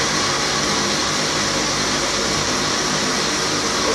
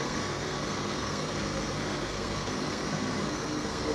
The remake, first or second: second